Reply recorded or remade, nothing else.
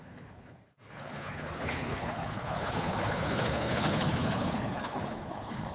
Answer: remade